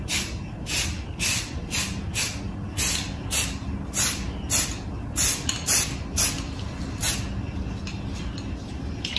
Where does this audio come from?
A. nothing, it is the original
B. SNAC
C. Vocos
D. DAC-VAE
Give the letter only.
A